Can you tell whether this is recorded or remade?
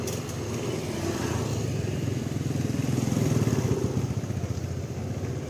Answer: recorded